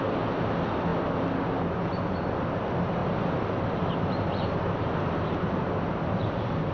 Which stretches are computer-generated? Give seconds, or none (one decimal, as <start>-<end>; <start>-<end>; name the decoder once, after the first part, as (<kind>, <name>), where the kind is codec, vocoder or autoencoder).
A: none